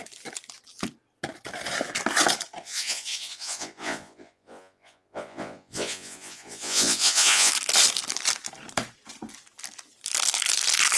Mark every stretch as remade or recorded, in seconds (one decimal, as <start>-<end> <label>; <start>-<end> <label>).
0.0-2.6 recorded; 2.6-7.5 remade; 7.5-11.0 recorded